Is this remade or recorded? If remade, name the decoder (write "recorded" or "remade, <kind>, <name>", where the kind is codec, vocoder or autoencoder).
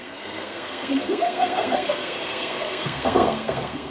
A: remade, codec, SNAC